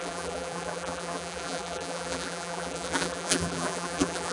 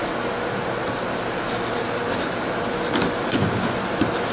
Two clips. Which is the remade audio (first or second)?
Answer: first